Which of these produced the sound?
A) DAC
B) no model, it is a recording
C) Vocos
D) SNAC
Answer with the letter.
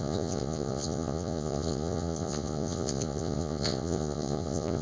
C